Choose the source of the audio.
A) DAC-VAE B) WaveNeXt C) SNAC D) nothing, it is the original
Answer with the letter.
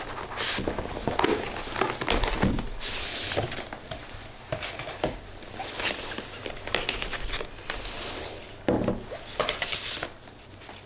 D